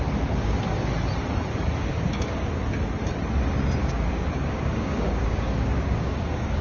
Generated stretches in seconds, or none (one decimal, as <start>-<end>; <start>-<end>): 1.9-2.5; 3.8-6.6